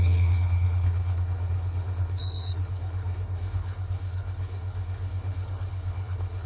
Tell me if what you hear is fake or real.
fake